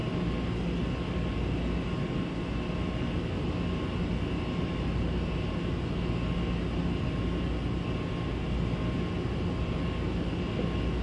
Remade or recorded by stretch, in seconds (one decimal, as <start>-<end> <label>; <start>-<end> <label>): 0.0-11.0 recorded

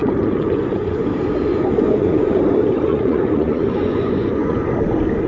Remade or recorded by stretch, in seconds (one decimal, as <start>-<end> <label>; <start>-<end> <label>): 0.0-1.1 remade; 1.1-1.5 recorded; 1.5-2.4 remade; 2.4-2.9 recorded; 2.9-4.7 remade; 4.7-5.3 recorded

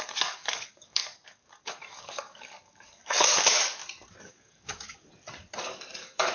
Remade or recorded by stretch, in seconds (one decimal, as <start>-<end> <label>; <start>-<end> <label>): 0.0-3.8 remade; 3.8-4.3 recorded; 4.3-5.1 remade; 5.1-5.6 recorded; 5.6-6.3 remade

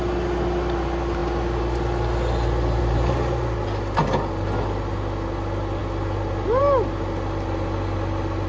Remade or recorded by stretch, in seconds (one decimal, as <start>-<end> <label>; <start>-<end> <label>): 0.0-8.5 recorded

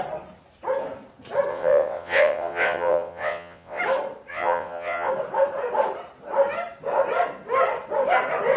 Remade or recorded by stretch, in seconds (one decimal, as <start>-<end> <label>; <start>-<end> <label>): 0.0-1.5 recorded; 1.5-3.8 remade; 3.8-4.3 recorded; 4.3-5.1 remade; 5.1-8.6 recorded

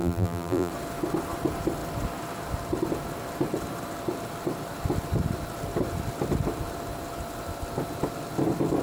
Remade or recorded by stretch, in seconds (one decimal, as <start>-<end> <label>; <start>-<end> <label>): 0.0-0.7 remade; 0.7-8.8 recorded

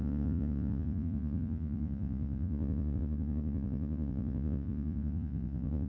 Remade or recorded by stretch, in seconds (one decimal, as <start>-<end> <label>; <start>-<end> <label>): 0.0-5.9 remade

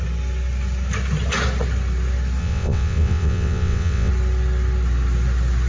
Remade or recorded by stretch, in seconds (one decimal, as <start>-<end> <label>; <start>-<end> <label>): 0.0-2.4 recorded; 2.4-4.1 remade; 4.1-5.7 recorded